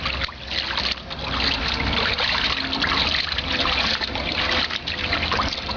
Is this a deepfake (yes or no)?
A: no